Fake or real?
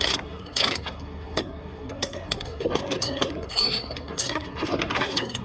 fake